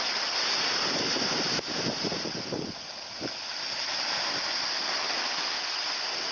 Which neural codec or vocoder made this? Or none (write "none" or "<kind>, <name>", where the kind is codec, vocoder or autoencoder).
none